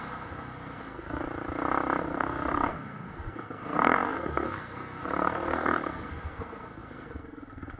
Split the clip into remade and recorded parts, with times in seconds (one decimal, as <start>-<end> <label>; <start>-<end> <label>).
0.0-1.2 remade; 1.2-2.0 recorded; 2.0-7.8 remade